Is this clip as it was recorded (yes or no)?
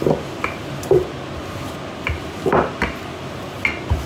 yes